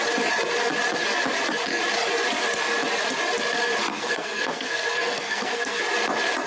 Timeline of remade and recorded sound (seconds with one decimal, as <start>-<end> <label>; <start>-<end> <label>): 0.0-3.9 recorded; 3.9-5.8 remade; 5.8-6.5 recorded